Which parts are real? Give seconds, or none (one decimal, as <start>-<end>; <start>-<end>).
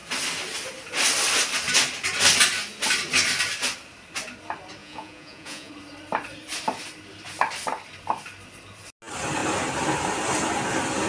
0.0-4.8; 5.7-11.1